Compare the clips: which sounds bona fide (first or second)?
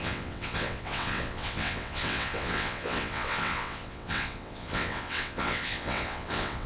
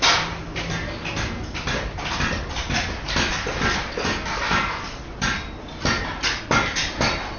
second